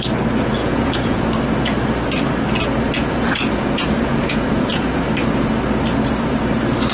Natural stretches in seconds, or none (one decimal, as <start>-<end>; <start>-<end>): 0.0-0.6; 1.2-3.0; 5.0-6.9